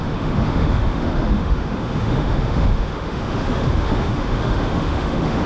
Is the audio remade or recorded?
remade